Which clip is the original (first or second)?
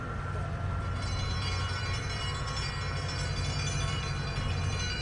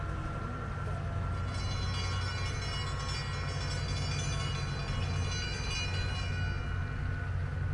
second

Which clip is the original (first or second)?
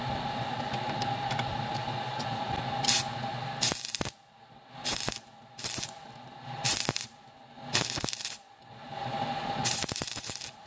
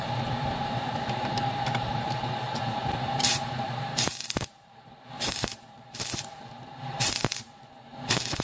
first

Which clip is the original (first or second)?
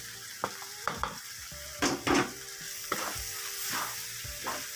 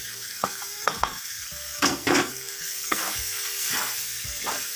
first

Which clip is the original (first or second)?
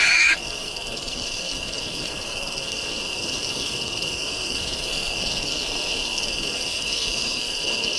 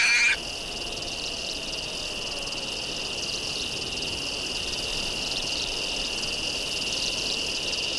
second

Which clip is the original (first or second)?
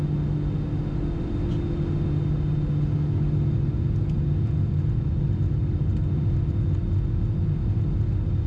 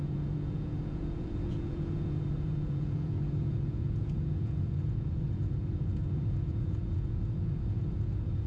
first